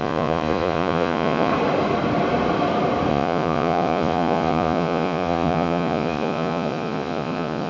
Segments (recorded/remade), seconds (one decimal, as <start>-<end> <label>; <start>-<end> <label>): 0.0-1.5 remade; 1.5-3.1 recorded; 3.1-7.7 remade